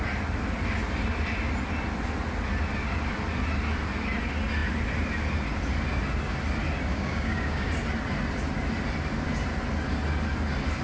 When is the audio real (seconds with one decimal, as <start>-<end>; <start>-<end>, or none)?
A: 0.0-6.9; 7.7-10.8